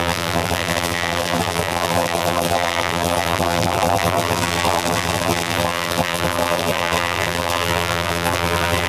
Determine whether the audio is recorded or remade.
remade